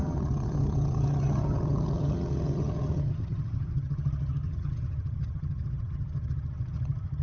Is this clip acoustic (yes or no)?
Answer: no